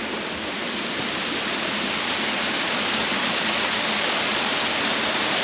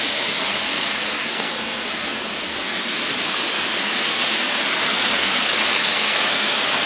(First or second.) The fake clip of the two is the second